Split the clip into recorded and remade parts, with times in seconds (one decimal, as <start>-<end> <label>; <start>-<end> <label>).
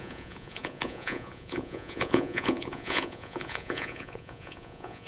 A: 0.0-5.1 remade